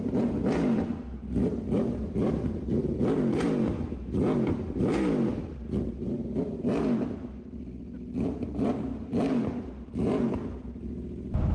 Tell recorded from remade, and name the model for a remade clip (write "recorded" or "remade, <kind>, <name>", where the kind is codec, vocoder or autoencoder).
recorded